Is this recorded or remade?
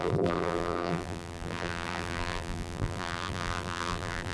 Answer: remade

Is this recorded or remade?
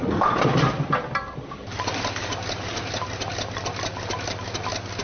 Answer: recorded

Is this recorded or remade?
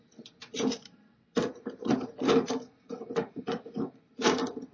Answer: remade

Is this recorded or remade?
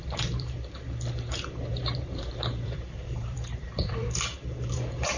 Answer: remade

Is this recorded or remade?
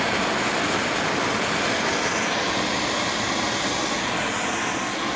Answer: recorded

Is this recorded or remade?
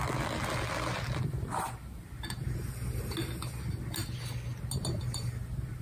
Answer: recorded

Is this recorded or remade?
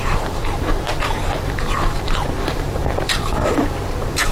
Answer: remade